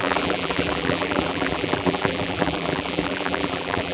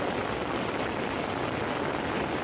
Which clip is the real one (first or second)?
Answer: second